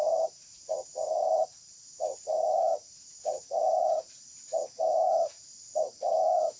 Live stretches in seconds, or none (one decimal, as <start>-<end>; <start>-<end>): none